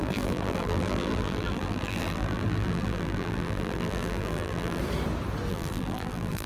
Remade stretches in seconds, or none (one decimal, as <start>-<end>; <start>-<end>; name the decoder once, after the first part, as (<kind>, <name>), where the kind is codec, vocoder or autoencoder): 0.0-4.8 (vocoder, BigVGAN v2); 5.5-6.5